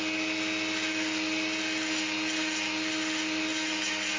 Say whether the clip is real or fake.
real